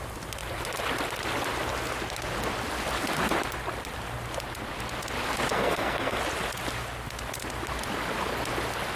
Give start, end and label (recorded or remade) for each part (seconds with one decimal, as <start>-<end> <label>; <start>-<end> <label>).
0.0-5.5 recorded; 5.5-6.2 remade; 6.2-9.0 recorded